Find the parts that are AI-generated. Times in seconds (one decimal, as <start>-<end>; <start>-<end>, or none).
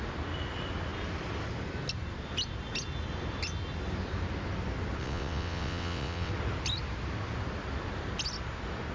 5.0-6.3